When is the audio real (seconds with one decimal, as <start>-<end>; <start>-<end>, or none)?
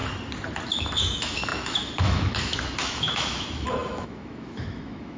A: 0.0-0.7